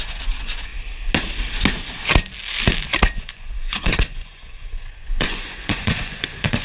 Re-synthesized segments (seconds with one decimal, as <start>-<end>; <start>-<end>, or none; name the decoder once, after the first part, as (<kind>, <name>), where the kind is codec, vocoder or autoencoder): 0.0-0.7 (vocoder, Vocos); 3.2-6.6